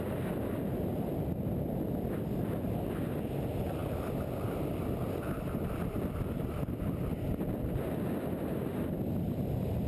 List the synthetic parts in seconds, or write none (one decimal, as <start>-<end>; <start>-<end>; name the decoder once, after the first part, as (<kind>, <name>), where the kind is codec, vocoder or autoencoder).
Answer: none